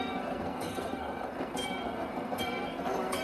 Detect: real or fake fake